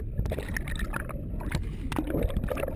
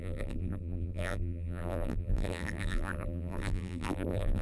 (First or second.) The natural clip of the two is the first